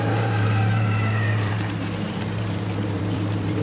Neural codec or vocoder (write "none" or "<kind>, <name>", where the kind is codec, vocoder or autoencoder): vocoder, BigVGAN v2